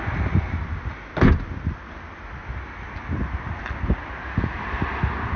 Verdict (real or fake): real